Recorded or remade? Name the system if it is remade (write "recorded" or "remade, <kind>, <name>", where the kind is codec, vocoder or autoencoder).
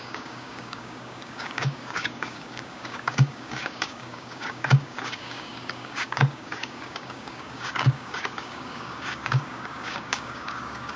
remade, codec, DAC